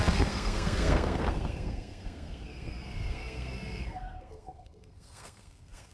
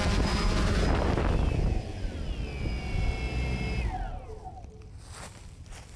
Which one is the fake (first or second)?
first